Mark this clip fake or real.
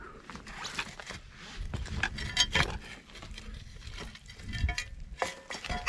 real